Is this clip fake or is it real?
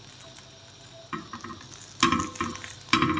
real